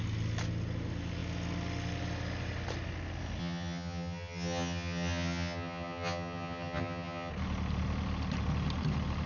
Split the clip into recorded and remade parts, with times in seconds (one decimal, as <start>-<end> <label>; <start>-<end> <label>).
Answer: 0.0-3.4 recorded; 3.4-7.3 remade; 7.3-9.3 recorded